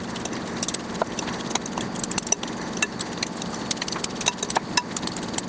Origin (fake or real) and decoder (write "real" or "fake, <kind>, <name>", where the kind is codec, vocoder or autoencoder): real